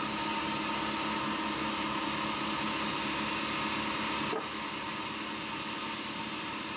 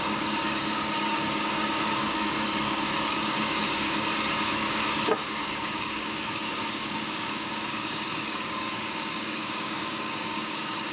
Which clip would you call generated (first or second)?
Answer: second